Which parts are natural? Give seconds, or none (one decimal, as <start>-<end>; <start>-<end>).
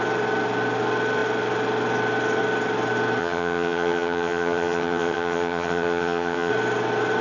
0.0-3.2; 6.5-7.2